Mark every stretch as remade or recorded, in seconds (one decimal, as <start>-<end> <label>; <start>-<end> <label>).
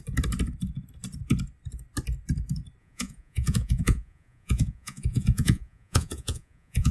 0.0-2.8 recorded; 2.8-6.9 remade